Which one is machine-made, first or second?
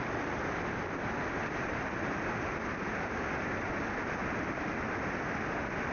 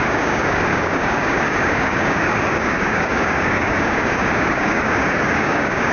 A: second